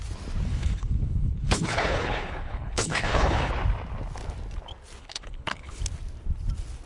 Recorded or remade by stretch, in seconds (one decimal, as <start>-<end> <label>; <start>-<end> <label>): 0.0-0.5 recorded; 0.5-3.5 remade; 3.5-5.0 recorded; 5.0-5.8 remade; 5.8-6.9 recorded